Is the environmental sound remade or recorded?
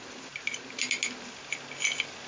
recorded